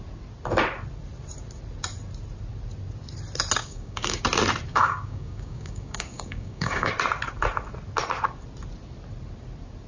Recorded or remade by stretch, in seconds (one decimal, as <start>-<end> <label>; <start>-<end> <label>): 0.0-3.6 recorded; 3.6-4.2 remade; 4.2-4.7 recorded; 4.7-6.9 remade; 6.9-9.9 recorded